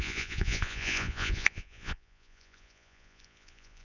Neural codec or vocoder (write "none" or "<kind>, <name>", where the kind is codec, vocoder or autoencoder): vocoder, Vocos